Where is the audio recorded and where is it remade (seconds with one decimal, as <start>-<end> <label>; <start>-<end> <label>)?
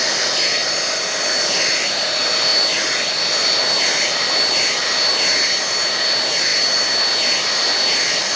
0.0-8.4 recorded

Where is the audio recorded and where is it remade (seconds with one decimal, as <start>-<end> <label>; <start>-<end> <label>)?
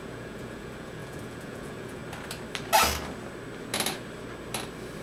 0.0-2.0 remade; 2.0-5.0 recorded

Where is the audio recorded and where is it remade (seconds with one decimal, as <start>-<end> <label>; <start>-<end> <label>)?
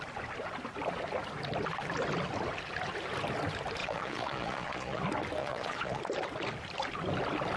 0.0-3.8 recorded; 3.8-5.0 remade; 5.0-5.4 recorded; 5.4-6.0 remade; 6.0-7.6 recorded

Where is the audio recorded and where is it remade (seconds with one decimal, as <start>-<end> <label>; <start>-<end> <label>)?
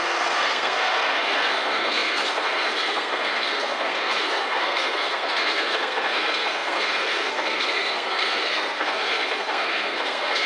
0.0-10.5 remade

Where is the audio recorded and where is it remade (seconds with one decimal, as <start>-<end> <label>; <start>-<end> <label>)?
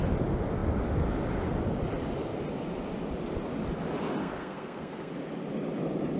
0.0-4.2 recorded; 4.2-5.1 remade; 5.1-6.2 recorded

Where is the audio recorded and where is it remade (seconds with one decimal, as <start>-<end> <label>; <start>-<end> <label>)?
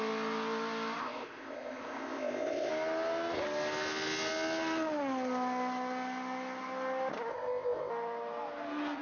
0.0-1.0 recorded; 1.0-2.7 remade; 2.7-7.3 recorded; 7.3-7.9 remade; 7.9-9.0 recorded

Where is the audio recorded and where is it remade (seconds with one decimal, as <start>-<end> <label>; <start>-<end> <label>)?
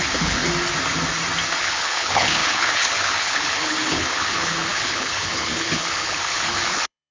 0.0-0.4 remade; 0.4-1.6 recorded; 1.6-7.1 remade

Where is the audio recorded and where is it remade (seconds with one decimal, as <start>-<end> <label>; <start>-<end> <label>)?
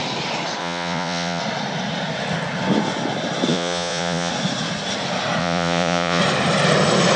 0.0-0.6 recorded; 0.6-1.4 remade; 1.4-3.5 recorded; 3.5-4.3 remade; 4.3-5.4 recorded; 5.4-6.2 remade; 6.2-7.2 recorded